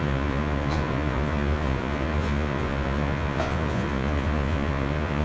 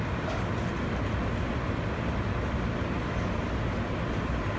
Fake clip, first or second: first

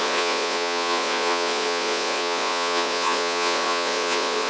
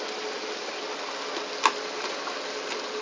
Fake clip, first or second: first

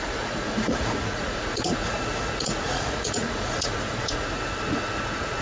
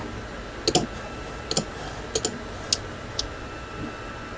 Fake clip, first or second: first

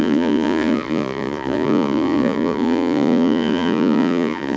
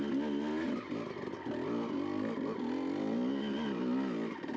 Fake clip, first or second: first